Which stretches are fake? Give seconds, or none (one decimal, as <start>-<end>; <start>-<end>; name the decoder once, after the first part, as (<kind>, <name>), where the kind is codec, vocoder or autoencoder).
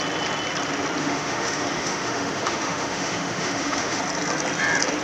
1.0-4.0 (autoencoder, DAC-VAE)